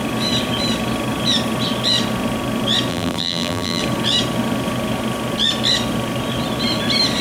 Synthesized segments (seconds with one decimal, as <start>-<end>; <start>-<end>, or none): 2.9-3.8